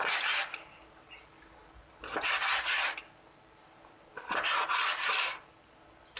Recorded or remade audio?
recorded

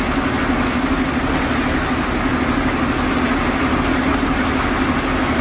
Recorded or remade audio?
recorded